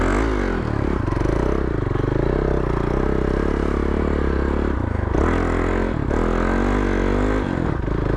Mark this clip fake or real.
real